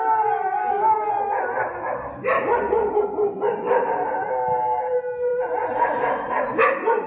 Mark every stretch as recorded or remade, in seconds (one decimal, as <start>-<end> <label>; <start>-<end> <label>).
0.0-0.6 recorded; 0.6-1.1 remade; 1.1-7.1 recorded